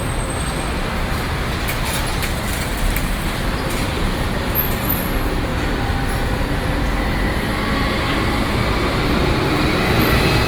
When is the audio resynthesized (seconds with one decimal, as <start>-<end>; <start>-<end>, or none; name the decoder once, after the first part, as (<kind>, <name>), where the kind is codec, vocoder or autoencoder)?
none